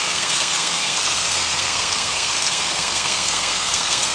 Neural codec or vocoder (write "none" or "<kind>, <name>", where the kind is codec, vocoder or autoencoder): codec, SNAC